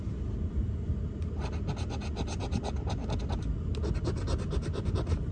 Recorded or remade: recorded